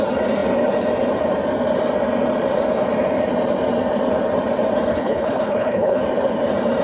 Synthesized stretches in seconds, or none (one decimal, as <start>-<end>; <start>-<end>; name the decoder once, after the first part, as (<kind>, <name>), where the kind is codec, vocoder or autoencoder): 4.9-6.0 (codec, HILCodec)